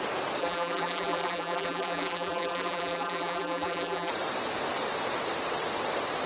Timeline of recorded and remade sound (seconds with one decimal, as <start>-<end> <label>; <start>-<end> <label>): 0.0-0.4 recorded; 0.4-4.1 remade; 4.1-6.3 recorded